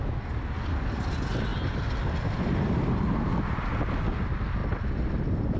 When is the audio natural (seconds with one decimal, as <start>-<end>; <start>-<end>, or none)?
0.0-5.6